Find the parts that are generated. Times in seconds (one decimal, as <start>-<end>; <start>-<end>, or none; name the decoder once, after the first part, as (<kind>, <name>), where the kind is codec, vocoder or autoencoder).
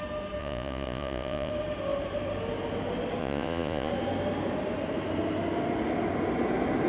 0.4-1.5 (vocoder, Vocos); 3.2-3.9